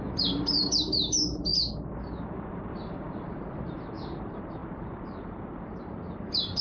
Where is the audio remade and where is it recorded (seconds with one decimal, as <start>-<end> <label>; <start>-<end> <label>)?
0.0-1.5 remade; 1.5-2.0 recorded; 2.0-4.6 remade; 4.6-5.2 recorded; 5.2-6.6 remade